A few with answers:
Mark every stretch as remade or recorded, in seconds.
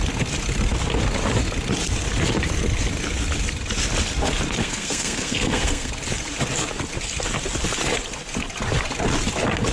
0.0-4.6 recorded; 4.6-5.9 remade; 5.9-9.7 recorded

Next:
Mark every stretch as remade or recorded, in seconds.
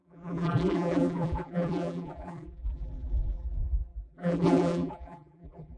0.0-5.8 remade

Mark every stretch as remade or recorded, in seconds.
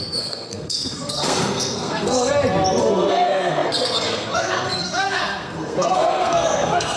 0.0-2.3 remade; 2.3-2.8 recorded; 2.8-7.0 remade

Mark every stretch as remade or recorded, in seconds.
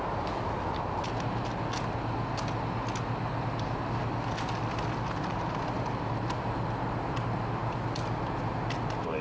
0.0-9.2 recorded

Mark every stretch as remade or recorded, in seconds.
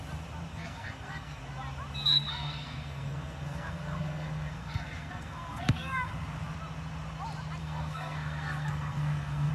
0.0-0.5 recorded; 0.5-1.4 remade; 1.4-2.1 recorded; 2.1-6.1 remade; 6.1-7.6 recorded; 7.6-9.5 remade